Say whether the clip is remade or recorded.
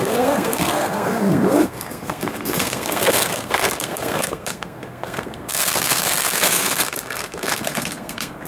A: remade